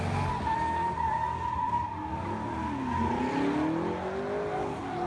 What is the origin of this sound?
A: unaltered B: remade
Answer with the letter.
A